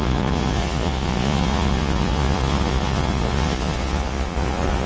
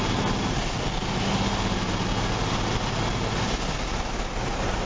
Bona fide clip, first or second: second